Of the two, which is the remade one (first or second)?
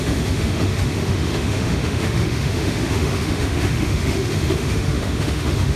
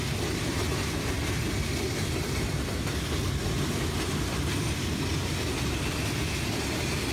first